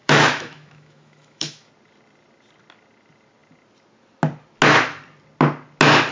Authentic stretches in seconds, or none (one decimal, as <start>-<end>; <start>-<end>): 1.7-6.1